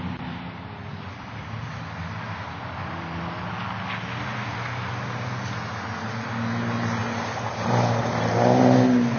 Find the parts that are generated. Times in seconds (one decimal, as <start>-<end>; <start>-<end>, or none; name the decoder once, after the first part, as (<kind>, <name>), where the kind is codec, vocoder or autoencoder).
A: none